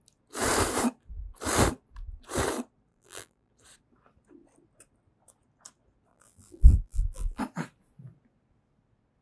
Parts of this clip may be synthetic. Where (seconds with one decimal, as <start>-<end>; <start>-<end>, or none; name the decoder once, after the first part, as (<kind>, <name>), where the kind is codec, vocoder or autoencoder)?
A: 2.9-3.5 (vocoder, BigVGAN v2); 6.1-7.4